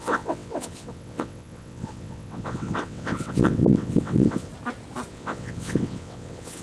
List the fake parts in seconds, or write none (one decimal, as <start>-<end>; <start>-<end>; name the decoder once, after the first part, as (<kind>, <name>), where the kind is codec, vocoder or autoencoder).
0.0-4.5 (vocoder, WaveNeXt); 5.1-6.6